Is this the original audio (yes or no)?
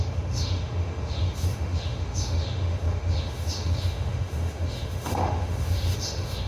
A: no